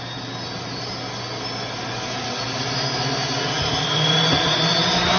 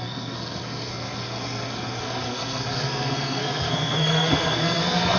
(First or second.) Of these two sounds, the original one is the first